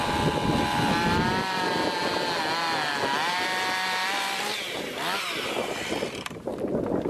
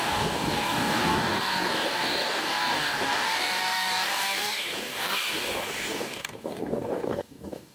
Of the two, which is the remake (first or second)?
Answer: second